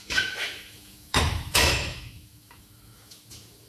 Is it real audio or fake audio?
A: fake